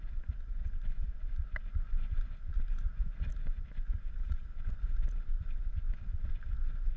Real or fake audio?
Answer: real